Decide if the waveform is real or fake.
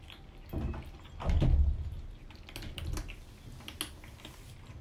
real